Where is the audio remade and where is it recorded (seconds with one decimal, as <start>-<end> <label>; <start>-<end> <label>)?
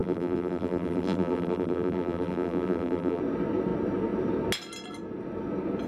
0.0-3.2 remade; 3.2-5.9 recorded